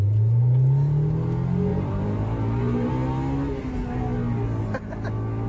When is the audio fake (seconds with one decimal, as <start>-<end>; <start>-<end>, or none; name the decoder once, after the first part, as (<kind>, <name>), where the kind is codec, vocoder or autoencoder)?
1.7-2.9 (vocoder, BigVGAN v2)